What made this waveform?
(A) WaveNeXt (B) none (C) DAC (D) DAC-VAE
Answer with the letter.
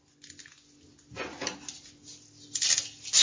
B